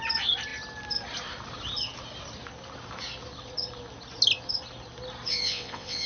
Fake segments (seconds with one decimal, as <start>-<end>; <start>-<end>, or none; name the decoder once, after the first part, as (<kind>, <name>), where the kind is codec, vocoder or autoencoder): 5.3-6.1 (vocoder, WaveNeXt)